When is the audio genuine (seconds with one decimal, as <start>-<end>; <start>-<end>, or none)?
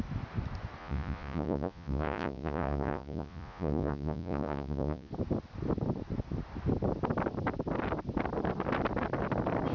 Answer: 0.0-0.8; 5.1-9.7